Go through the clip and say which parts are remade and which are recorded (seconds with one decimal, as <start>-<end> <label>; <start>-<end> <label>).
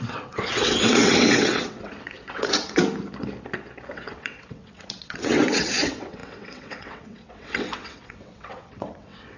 0.0-2.8 remade; 2.8-3.9 recorded; 3.9-9.4 remade